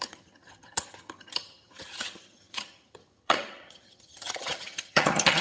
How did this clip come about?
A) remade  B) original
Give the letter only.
A